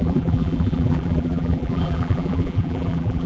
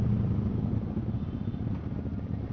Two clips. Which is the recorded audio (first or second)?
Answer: second